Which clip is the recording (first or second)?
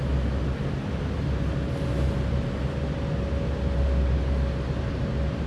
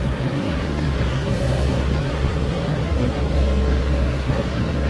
first